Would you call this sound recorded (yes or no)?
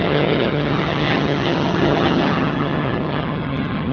no